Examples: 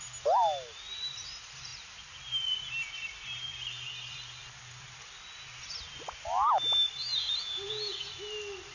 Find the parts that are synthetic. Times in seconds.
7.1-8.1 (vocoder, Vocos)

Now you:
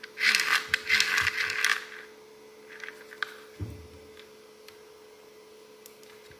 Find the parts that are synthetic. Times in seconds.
none

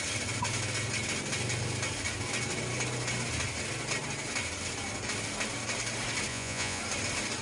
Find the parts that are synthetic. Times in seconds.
6.3-6.8 (vocoder, Vocos)

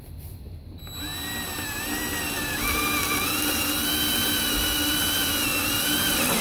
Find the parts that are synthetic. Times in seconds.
none

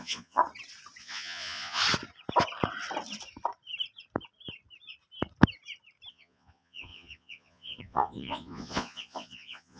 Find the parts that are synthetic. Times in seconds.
0.0-0.4 (vocoder, Vocos); 1.0-1.8; 6.1-9.8

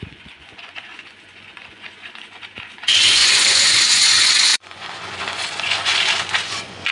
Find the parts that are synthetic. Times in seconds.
0.0-6.9 (vocoder, Vocos)